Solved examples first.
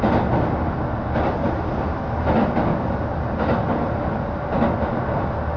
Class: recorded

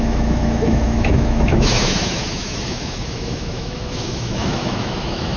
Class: remade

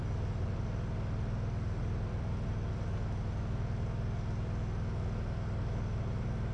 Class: recorded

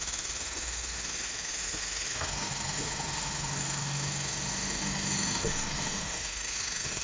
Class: remade